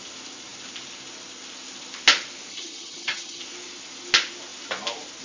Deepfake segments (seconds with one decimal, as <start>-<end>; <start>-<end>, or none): 2.5-3.4